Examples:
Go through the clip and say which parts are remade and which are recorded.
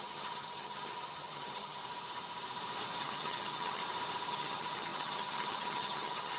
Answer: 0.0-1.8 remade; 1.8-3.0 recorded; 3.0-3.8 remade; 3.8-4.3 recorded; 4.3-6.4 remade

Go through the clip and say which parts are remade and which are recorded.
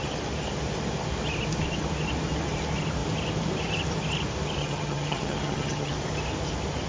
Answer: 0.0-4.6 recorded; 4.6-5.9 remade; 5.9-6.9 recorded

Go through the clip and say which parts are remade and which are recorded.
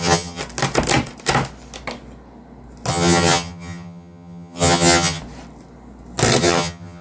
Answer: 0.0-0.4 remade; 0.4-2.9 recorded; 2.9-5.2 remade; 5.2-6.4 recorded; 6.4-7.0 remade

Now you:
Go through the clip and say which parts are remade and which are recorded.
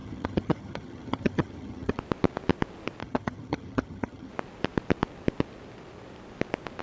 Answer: 0.0-2.0 remade; 2.0-3.0 recorded; 3.0-4.3 remade; 4.3-6.8 recorded